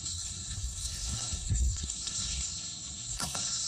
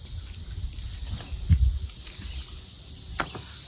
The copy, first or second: first